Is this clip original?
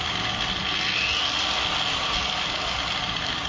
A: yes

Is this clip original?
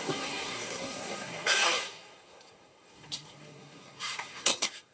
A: no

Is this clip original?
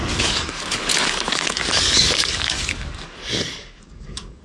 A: no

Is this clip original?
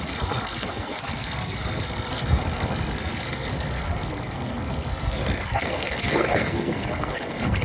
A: no